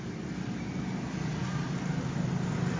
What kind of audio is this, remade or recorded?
recorded